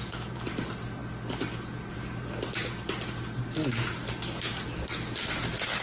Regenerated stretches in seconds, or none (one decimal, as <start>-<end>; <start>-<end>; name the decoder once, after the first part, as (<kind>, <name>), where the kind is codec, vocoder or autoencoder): none